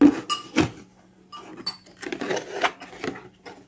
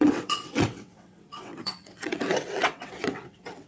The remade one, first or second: second